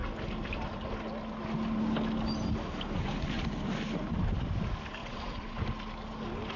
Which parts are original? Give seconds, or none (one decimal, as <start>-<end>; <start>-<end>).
0.0-5.0; 5.6-6.6